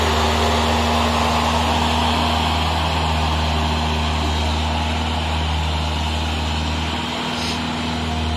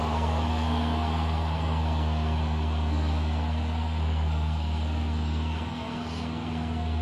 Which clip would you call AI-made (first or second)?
second